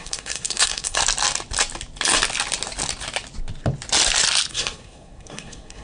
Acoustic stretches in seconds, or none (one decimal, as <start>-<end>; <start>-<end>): 1.0-4.5